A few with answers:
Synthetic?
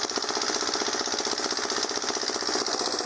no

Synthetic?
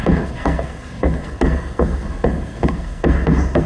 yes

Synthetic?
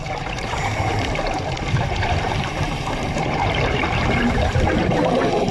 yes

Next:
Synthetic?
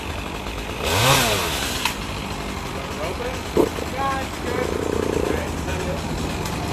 no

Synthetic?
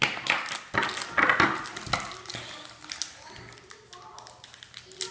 no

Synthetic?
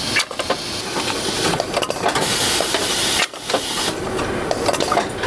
no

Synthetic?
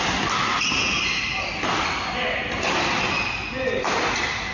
no